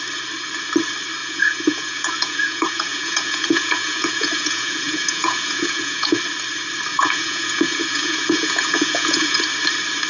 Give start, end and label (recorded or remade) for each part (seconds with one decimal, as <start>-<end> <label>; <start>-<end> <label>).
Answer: 0.0-1.2 recorded; 1.2-6.2 remade; 6.2-6.9 recorded; 6.9-9.4 remade; 9.4-10.1 recorded